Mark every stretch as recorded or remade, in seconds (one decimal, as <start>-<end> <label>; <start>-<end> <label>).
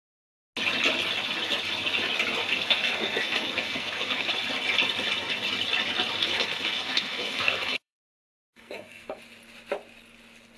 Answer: 0.0-2.4 recorded; 2.4-4.3 remade; 4.3-6.2 recorded; 6.2-9.2 remade; 9.2-10.6 recorded